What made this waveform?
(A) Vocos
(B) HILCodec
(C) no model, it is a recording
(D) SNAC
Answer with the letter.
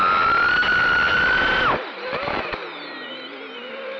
C